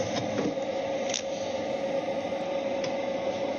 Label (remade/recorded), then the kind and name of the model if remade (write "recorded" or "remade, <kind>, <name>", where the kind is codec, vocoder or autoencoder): recorded